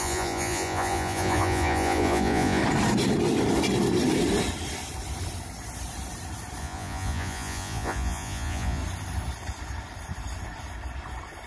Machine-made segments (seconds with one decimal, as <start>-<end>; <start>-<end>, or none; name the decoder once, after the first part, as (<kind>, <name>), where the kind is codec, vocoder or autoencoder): 0.0-2.6 (vocoder, Vocos); 6.6-8.8